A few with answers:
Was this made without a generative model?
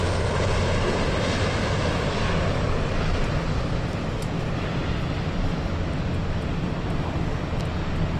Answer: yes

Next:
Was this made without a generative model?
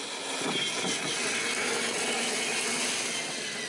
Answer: yes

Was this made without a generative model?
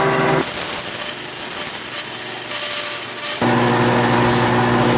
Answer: yes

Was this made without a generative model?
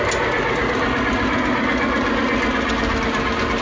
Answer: yes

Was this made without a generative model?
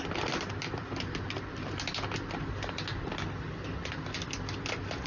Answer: yes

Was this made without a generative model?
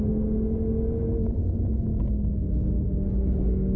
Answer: yes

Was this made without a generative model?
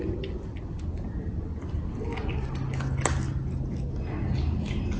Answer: yes